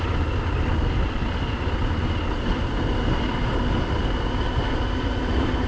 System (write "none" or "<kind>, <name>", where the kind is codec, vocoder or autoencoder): none